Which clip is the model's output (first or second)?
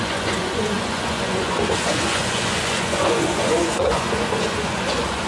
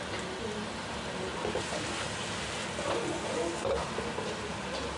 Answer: first